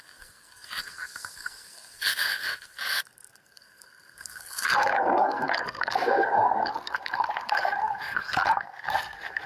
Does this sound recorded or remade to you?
remade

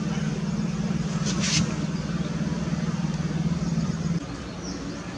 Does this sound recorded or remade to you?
recorded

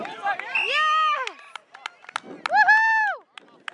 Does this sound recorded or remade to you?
recorded